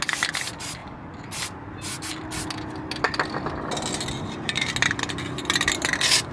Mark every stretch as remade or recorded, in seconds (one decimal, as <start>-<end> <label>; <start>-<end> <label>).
0.0-6.3 recorded